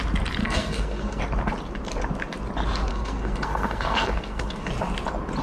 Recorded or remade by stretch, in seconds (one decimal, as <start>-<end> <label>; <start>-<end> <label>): 0.0-0.4 recorded; 0.4-1.2 remade; 1.2-2.9 recorded; 2.9-4.7 remade; 4.7-5.4 recorded